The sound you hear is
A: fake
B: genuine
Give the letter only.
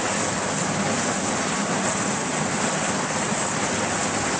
B